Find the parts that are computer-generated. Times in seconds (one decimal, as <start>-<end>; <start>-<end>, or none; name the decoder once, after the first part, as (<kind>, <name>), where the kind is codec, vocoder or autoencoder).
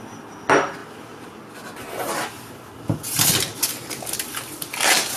none